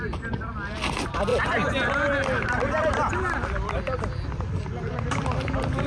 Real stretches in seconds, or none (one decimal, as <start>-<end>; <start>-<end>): 0.0-5.9